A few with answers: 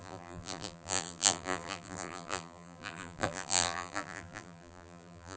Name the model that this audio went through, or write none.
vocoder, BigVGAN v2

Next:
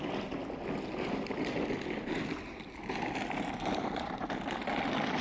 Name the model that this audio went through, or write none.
none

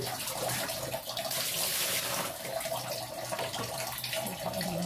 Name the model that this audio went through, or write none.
vocoder, BigVGAN v2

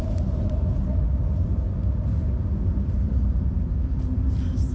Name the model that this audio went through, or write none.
vocoder, BigVGAN v2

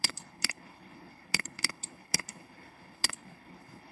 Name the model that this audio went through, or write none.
codec, HILCodec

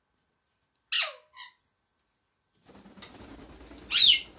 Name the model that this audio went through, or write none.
none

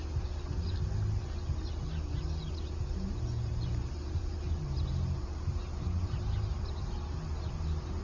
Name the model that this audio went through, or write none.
none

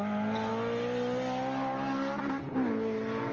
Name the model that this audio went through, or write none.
none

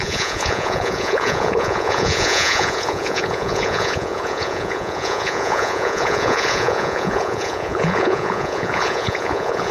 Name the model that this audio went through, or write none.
vocoder, Vocos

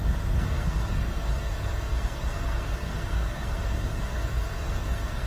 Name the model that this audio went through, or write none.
codec, SNAC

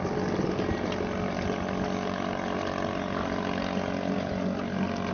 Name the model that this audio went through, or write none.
none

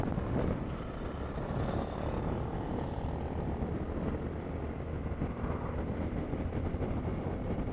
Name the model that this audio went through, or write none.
none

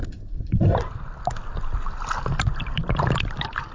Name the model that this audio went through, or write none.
none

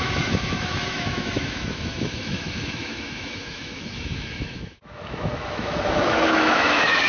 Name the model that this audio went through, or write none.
autoencoder, DAC-VAE